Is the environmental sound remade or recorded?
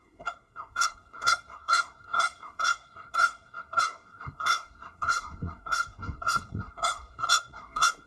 remade